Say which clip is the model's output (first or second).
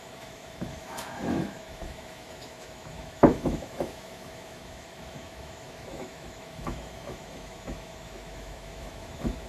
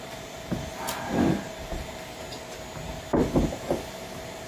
first